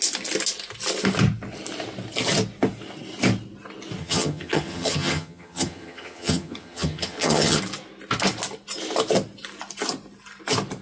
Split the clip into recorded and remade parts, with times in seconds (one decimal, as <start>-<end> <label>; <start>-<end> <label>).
0.0-4.0 recorded; 4.0-7.6 remade; 7.6-10.8 recorded